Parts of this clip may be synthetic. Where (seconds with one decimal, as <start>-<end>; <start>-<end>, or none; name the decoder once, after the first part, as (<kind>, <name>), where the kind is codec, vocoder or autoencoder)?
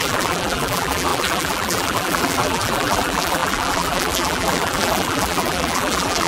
0.0-6.3 (vocoder, BigVGAN v2)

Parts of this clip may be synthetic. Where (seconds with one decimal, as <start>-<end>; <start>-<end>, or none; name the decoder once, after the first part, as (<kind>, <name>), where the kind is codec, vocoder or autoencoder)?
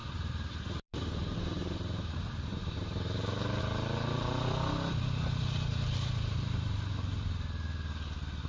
0.0-3.6 (vocoder, BigVGAN v2); 5.7-7.3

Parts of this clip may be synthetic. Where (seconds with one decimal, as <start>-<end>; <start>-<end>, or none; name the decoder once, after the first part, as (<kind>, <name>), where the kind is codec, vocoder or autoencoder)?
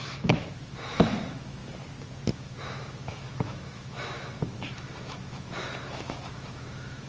0.0-1.6 (autoencoder, DAC-VAE); 2.3-7.1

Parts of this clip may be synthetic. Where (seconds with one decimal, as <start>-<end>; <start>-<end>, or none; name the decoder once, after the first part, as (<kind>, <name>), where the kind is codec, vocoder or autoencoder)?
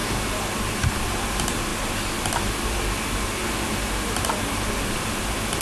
none